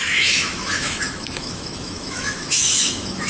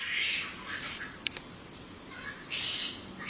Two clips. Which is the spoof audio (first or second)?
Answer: first